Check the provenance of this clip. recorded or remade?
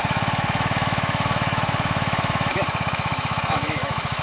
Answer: remade